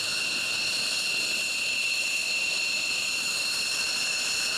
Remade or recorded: recorded